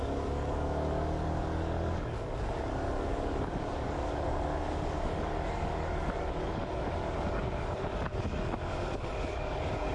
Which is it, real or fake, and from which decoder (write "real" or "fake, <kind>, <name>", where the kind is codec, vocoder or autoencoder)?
fake, codec, DAC